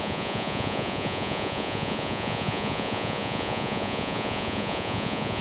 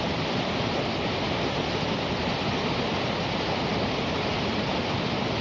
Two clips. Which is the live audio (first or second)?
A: second